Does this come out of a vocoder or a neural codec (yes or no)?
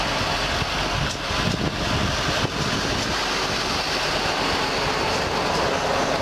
no